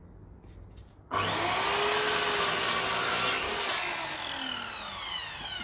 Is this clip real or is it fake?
real